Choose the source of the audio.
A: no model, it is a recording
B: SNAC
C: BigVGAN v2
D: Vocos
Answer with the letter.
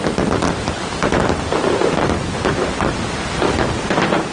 C